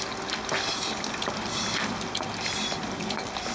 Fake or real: real